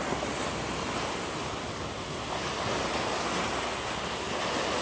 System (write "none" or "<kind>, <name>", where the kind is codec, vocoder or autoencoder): none